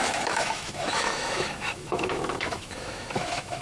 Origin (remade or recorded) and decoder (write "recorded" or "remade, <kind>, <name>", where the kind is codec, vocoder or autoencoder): remade, autoencoder, DAC-VAE